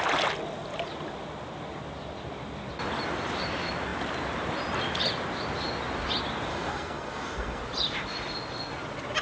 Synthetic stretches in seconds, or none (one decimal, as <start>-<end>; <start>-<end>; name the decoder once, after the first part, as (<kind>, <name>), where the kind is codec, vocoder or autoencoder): 6.5-7.6 (codec, SNAC)